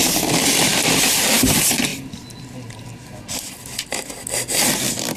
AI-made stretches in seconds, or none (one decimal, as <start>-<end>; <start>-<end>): none